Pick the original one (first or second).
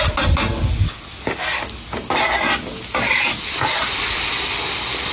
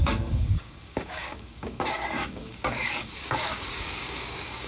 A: first